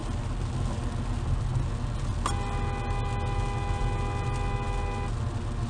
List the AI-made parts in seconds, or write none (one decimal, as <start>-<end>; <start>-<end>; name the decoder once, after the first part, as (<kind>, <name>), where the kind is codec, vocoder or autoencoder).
none